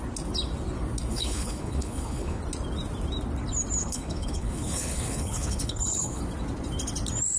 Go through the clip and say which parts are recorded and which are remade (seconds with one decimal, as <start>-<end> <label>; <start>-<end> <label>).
0.0-1.1 recorded; 1.1-2.4 remade; 2.4-3.8 recorded; 3.8-6.2 remade; 6.2-7.4 recorded